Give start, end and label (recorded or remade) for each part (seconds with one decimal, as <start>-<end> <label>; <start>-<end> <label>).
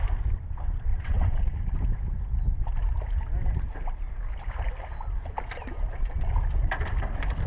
0.0-0.9 recorded; 0.9-1.5 remade; 1.5-7.5 recorded